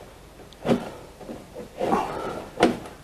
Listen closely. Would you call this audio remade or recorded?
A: remade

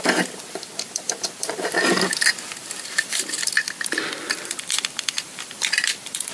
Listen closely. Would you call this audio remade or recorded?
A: remade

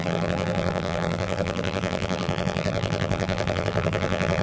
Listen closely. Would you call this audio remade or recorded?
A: remade